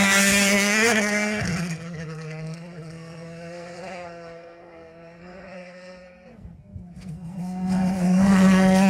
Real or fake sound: fake